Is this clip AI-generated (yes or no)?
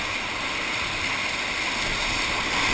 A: no